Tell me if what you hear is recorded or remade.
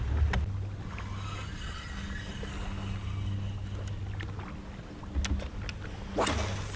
recorded